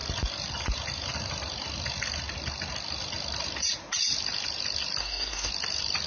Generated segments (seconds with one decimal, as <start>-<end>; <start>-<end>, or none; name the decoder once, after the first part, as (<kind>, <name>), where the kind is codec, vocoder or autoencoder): 5.0-5.5 (codec, SNAC)

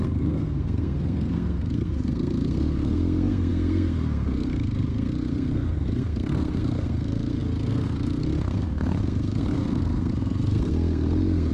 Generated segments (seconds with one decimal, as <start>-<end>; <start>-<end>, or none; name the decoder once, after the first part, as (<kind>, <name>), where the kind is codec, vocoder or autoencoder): 0.0-11.5 (codec, SNAC)